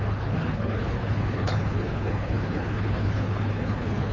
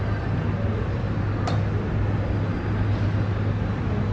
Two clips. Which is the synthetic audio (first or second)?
first